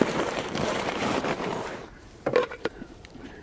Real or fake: fake